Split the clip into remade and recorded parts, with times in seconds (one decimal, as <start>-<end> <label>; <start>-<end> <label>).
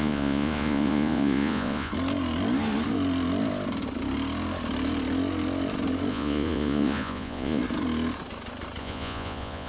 0.0-1.9 remade; 1.9-6.1 recorded; 6.1-7.6 remade; 7.6-8.8 recorded; 8.8-9.7 remade